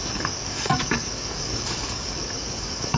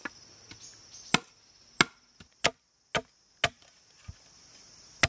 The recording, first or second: second